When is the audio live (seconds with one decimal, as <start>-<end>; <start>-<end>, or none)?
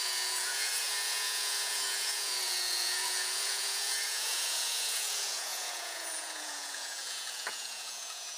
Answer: none